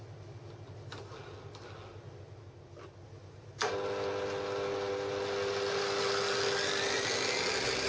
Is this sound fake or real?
real